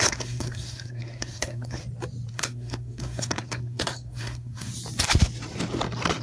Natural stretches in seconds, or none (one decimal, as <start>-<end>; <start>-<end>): 1.8-2.3; 4.7-6.2